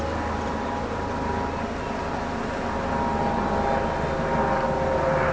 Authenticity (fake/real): real